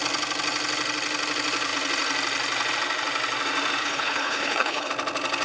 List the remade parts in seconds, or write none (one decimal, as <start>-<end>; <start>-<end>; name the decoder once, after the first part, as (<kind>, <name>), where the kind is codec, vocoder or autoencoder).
3.8-4.9 (codec, HILCodec)